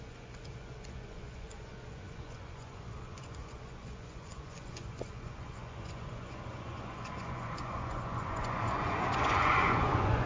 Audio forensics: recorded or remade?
remade